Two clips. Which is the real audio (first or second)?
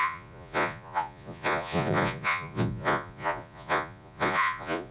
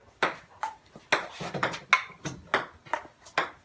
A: second